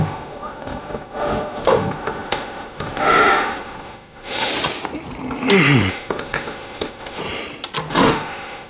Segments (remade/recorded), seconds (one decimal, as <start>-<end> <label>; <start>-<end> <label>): 0.0-4.5 remade; 4.5-5.9 recorded; 5.9-7.2 remade; 7.2-7.9 recorded; 7.9-8.7 remade